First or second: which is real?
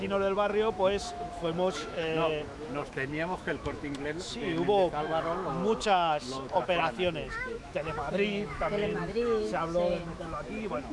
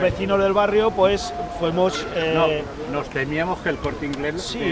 second